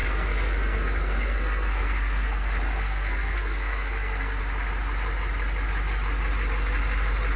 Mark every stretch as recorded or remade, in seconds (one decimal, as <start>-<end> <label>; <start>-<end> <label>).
0.0-4.4 remade; 4.4-7.4 recorded